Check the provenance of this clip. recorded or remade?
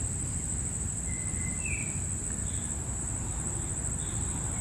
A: recorded